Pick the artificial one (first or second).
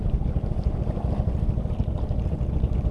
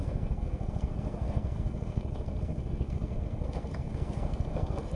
second